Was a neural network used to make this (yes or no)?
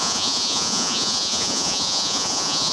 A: yes